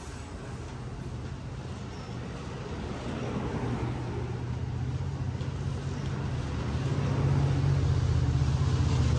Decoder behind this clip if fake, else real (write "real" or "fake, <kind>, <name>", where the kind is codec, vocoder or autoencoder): real